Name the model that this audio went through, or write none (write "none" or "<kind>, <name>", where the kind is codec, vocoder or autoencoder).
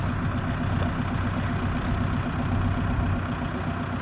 none